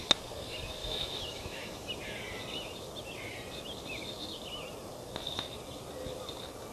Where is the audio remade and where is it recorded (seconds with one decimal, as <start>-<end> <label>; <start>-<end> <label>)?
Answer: 0.0-0.8 recorded; 0.8-1.9 remade; 1.9-6.7 recorded